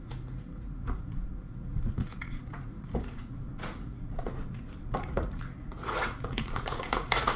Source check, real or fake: fake